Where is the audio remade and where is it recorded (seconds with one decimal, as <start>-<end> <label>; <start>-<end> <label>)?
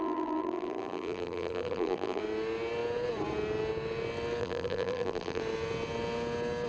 0.0-2.2 remade; 2.2-4.4 recorded; 4.4-5.4 remade; 5.4-6.7 recorded